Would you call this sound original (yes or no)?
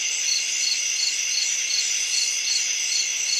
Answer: yes